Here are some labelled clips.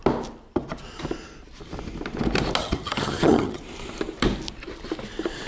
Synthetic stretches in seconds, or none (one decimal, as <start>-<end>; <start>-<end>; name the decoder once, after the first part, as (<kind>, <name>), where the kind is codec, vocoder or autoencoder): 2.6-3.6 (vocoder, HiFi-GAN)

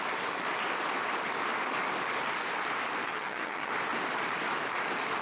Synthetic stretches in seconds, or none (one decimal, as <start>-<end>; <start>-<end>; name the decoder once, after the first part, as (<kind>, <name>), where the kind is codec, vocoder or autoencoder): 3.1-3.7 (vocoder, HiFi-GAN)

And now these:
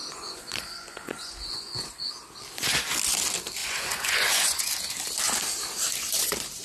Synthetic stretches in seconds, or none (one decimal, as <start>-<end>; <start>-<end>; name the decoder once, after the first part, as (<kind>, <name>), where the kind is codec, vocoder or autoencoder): 0.0-2.1 (vocoder, Vocos); 3.6-4.7